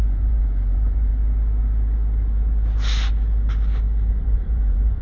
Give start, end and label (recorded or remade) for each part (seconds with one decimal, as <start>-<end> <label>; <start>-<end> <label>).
0.0-1.1 remade; 1.1-4.1 recorded; 4.1-5.0 remade